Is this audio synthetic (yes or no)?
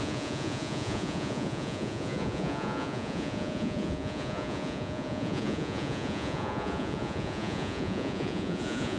yes